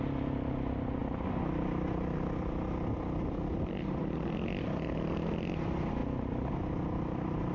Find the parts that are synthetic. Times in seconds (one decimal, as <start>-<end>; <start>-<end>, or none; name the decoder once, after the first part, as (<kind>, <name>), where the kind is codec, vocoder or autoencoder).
none